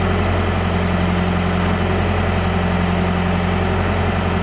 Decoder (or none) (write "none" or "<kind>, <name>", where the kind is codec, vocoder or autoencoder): none